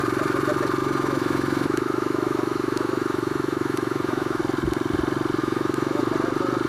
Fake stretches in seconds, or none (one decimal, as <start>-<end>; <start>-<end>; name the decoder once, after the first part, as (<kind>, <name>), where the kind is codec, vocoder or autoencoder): 0.8-4.4 (autoencoder, DAC-VAE); 5.4-6.0